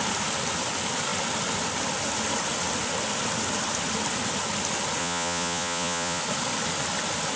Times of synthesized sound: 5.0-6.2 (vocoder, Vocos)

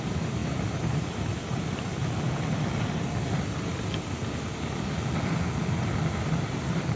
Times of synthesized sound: none